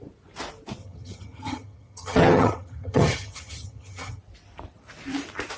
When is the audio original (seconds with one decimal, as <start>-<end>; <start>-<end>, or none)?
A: 0.0-0.8; 4.2-5.6